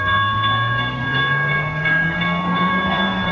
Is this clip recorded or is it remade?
remade